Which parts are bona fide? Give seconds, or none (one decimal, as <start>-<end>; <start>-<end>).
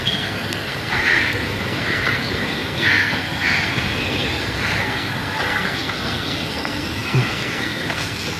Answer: none